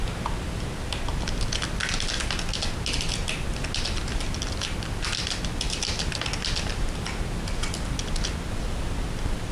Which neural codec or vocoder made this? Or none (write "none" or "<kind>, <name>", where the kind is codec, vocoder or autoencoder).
none